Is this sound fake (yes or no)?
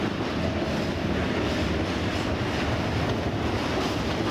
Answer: no